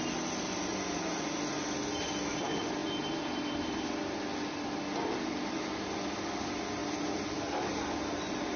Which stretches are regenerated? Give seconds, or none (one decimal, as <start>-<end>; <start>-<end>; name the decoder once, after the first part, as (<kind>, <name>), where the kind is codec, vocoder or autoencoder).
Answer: none